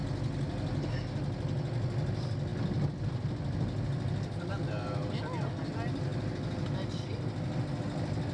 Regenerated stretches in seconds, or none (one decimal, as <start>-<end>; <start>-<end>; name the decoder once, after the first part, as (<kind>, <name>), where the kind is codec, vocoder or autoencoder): none